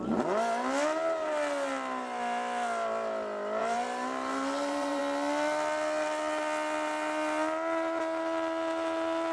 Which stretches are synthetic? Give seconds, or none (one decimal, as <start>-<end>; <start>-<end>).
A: 3.6-5.0